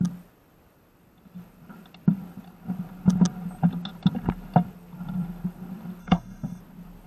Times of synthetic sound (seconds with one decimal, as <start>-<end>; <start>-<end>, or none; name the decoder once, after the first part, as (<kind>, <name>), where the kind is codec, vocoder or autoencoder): 6.0-6.6 (codec, SNAC)